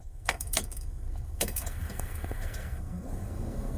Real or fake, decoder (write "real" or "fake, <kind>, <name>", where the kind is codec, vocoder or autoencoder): fake, codec, SNAC